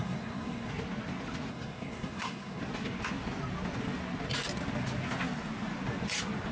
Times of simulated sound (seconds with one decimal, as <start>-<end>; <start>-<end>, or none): 0.0-0.7; 1.5-2.6